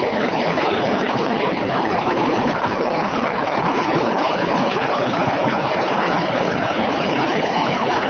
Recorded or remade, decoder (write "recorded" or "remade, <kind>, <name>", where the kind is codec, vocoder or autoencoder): remade, codec, HILCodec